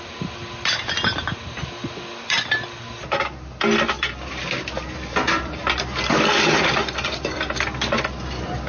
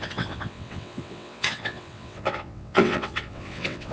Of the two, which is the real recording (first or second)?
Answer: first